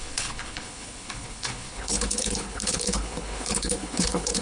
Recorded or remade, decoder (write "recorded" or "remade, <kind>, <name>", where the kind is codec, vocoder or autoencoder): remade, codec, HILCodec